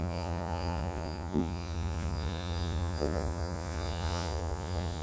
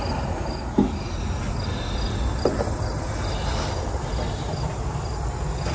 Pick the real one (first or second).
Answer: second